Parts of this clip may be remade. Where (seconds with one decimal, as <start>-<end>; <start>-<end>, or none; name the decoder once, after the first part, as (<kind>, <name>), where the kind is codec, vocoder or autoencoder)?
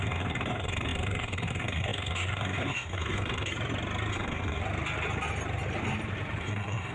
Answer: 0.0-3.5 (codec, SNAC); 4.1-4.6; 6.4-6.9